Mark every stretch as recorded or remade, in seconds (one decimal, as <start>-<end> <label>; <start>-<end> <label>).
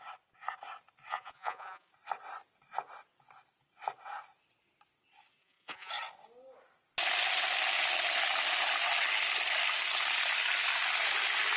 0.0-1.1 recorded; 1.1-1.9 remade; 1.9-5.4 recorded; 5.4-5.9 remade; 5.9-11.6 recorded